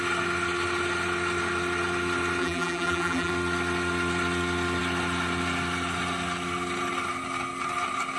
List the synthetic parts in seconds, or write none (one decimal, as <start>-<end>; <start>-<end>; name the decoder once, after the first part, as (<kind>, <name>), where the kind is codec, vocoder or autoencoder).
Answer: 2.4-3.3 (vocoder, BigVGAN v2)